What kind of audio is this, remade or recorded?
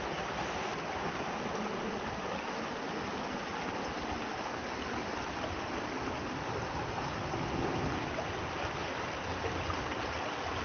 recorded